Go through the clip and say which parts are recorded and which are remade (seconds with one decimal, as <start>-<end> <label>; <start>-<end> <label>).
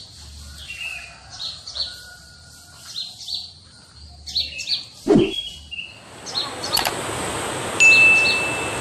0.0-1.3 recorded; 1.3-3.9 remade; 3.9-6.6 recorded; 6.6-7.5 remade; 7.5-8.8 recorded